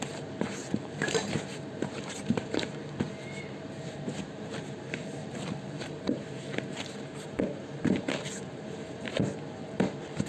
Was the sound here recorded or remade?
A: remade